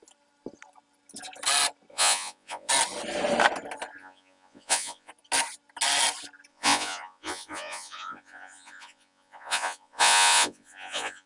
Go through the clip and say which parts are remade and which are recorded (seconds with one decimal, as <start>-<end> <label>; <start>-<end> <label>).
0.0-1.9 recorded; 1.9-2.7 remade; 2.7-4.0 recorded; 4.0-5.1 remade; 5.1-6.5 recorded; 6.5-11.3 remade